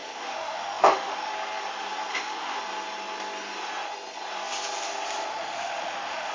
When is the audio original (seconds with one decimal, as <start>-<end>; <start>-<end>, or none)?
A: 1.3-2.1; 2.6-5.3